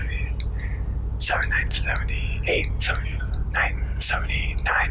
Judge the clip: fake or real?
real